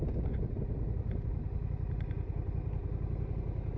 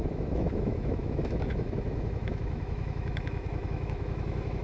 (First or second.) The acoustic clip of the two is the first